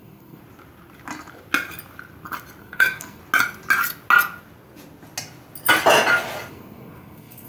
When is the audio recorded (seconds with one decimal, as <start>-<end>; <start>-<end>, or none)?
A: 0.4-2.6; 3.2-6.5